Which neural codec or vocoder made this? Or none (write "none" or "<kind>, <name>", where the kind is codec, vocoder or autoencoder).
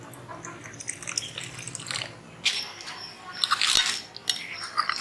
none